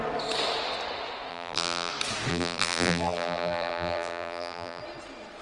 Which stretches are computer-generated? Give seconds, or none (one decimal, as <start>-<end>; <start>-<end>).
1.3-1.9; 2.3-4.8